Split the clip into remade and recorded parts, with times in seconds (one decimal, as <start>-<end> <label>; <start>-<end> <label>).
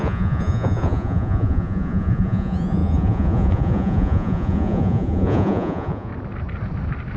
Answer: 0.0-6.1 remade; 6.1-7.2 recorded